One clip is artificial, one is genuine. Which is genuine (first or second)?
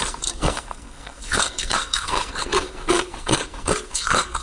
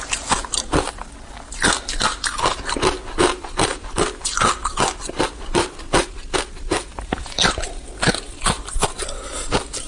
second